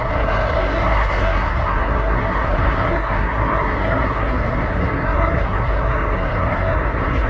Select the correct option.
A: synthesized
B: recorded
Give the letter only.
A